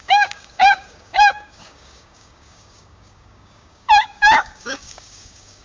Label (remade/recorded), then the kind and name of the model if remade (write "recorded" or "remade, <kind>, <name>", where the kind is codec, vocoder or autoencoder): remade, codec, DAC